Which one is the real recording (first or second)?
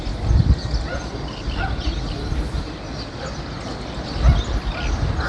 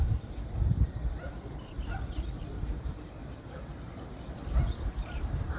first